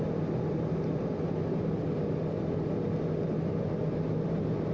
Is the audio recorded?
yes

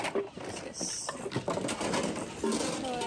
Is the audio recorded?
yes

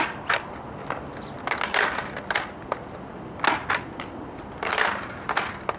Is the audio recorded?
yes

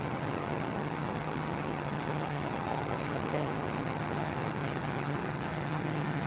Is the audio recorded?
no